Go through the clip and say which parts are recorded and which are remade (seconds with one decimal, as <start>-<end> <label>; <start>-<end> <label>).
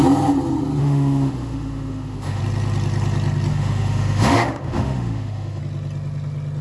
0.0-0.8 recorded; 0.8-2.4 remade; 2.4-3.5 recorded; 3.5-5.6 remade; 5.6-6.6 recorded